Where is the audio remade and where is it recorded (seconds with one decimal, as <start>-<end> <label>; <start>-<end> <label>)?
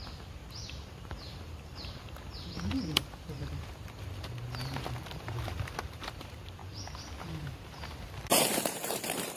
0.0-6.6 remade; 6.6-7.2 recorded; 7.2-9.4 remade